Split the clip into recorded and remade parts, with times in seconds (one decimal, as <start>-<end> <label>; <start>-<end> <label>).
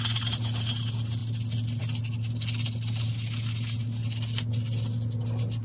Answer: 0.0-5.6 recorded